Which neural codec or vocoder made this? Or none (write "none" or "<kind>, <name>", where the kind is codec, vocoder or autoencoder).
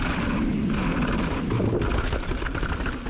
vocoder, BigVGAN v2